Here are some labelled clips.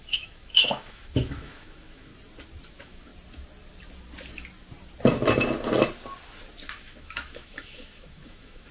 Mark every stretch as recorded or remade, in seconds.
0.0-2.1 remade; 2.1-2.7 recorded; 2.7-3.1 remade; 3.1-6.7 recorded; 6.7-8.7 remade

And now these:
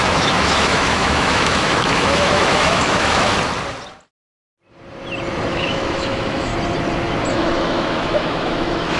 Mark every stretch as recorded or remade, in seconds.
0.0-3.3 remade; 3.3-5.5 recorded; 5.5-6.5 remade; 6.5-7.3 recorded; 7.3-9.0 remade

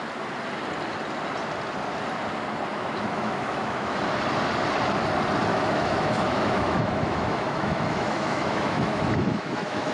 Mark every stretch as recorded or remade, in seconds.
0.0-2.7 recorded; 2.7-4.0 remade; 4.0-5.5 recorded; 5.5-9.9 remade

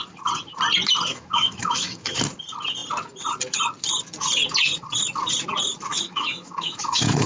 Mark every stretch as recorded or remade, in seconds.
0.0-1.1 recorded; 1.1-2.2 remade; 2.2-5.9 recorded; 5.9-7.3 remade

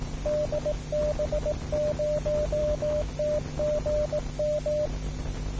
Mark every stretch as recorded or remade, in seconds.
0.0-2.6 recorded; 2.6-3.1 remade; 3.1-5.6 recorded

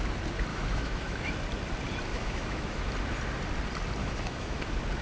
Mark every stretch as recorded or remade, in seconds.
0.0-0.5 recorded; 0.5-1.3 remade; 1.3-2.1 recorded; 2.1-2.8 remade; 2.8-4.0 recorded; 4.0-4.6 remade; 4.6-5.0 recorded

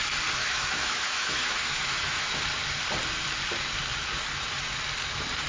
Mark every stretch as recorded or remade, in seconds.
0.0-0.4 recorded; 0.4-2.4 remade; 2.4-5.5 recorded

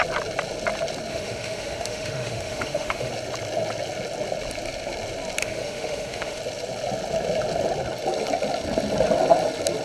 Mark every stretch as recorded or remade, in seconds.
0.0-1.1 recorded; 1.1-3.1 remade; 3.1-5.4 recorded; 5.4-6.4 remade; 6.4-9.8 recorded